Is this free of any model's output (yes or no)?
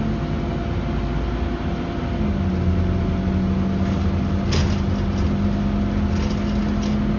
yes